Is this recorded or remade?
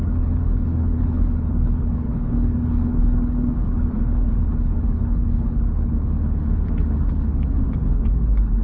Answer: remade